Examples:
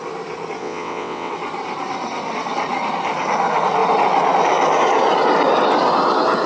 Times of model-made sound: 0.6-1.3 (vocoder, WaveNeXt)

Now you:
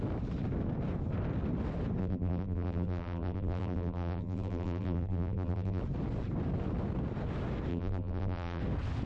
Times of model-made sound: 2.0-5.8 (vocoder, BigVGAN v2); 7.7-8.6

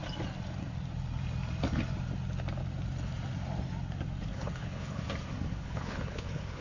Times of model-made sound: 4.3-5.0 (codec, HILCodec); 5.5-6.6